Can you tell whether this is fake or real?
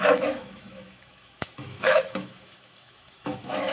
fake